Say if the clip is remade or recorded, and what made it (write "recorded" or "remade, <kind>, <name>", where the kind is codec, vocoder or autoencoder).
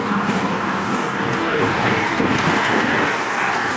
remade, codec, DAC